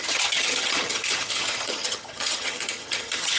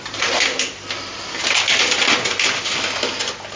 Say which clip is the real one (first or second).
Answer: second